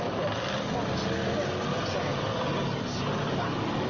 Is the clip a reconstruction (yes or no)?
no